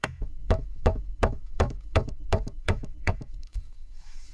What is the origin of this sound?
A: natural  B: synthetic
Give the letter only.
B